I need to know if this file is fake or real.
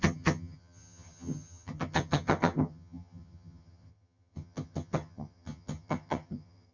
fake